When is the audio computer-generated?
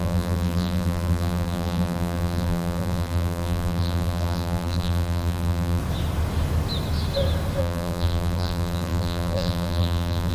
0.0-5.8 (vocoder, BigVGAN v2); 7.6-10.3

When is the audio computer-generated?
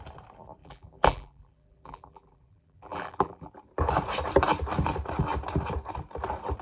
0.6-3.5 (vocoder, BigVGAN v2)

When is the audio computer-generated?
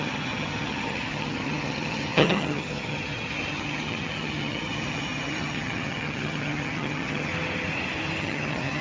0.0-7.3 (vocoder, HiFi-GAN); 8.2-8.8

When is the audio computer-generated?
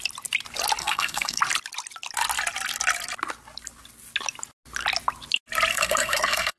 0.8-1.4 (codec, SNAC); 5.7-6.6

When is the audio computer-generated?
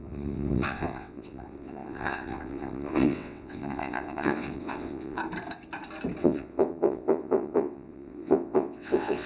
0.0-5.2 (vocoder, WaveNeXt); 6.2-9.3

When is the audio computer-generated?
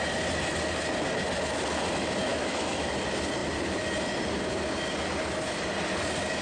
2.3-2.9 (autoencoder, DAC-VAE)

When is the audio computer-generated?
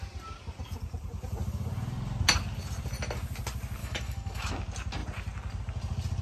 3.8-4.5 (autoencoder, DAC-VAE)